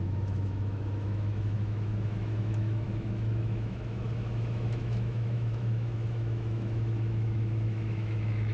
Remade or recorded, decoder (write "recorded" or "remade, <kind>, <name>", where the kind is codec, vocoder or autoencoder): remade, autoencoder, DAC-VAE